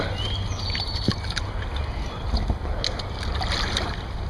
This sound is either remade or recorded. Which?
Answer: recorded